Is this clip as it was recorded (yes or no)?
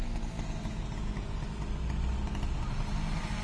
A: yes